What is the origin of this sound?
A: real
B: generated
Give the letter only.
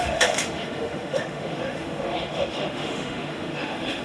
B